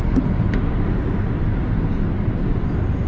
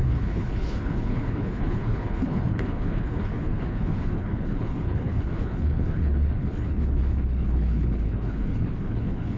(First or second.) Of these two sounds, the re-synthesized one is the second